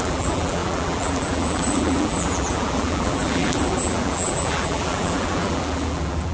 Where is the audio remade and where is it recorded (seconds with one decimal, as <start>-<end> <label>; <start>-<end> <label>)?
0.0-6.3 remade